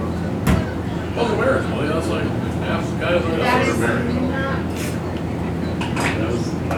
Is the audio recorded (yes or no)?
yes